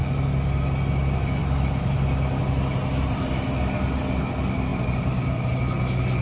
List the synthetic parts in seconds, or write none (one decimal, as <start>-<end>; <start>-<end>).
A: 1.4-3.3; 4.7-5.5